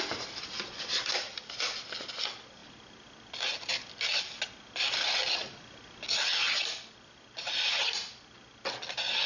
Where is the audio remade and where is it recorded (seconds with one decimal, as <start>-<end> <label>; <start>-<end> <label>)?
0.0-9.3 recorded